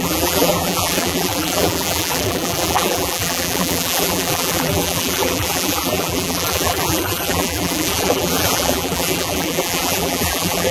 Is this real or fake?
fake